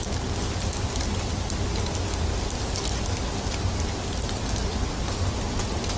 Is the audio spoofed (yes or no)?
no